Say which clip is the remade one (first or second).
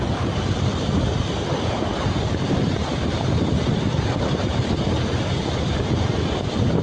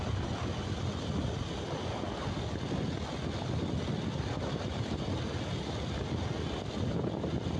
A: first